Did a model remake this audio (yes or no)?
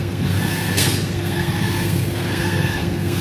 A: yes